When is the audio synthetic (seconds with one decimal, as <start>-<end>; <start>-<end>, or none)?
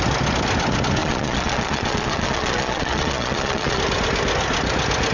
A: 1.0-3.8